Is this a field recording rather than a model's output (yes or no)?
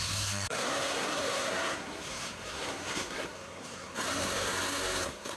no